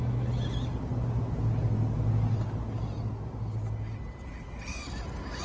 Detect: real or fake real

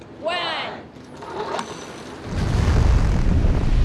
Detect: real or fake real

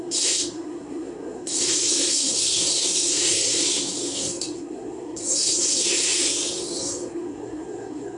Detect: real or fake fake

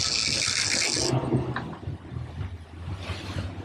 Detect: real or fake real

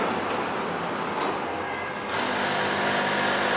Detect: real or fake real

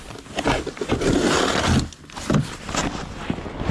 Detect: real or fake real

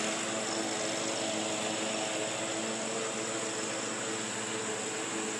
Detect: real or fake real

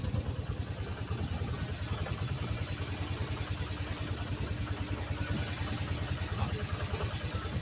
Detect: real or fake real